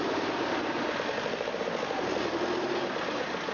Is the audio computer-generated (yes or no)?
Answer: no